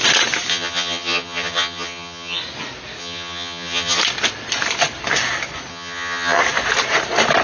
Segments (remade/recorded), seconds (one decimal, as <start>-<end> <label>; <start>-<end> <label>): 0.0-0.5 recorded; 0.5-2.4 remade; 2.4-3.0 recorded; 3.0-4.0 remade; 4.0-5.7 recorded; 5.7-6.4 remade; 6.4-7.4 recorded